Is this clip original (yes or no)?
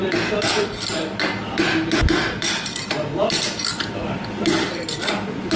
yes